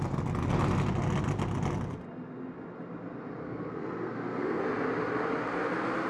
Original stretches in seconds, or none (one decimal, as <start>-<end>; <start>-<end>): 0.0-3.4; 4.6-6.1

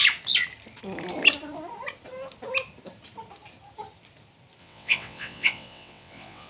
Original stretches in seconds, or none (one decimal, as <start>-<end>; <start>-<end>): 0.0-4.6

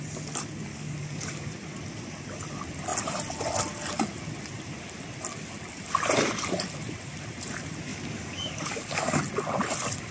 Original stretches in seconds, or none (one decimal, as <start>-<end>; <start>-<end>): 0.0-0.7; 1.5-7.9; 9.2-10.1